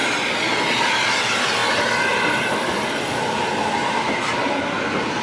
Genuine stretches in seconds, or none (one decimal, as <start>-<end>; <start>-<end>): 0.0-5.2